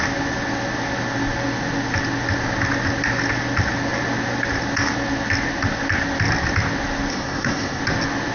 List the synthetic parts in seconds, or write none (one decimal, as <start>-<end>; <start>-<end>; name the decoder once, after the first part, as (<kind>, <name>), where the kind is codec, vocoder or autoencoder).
7.1-7.8 (codec, SNAC)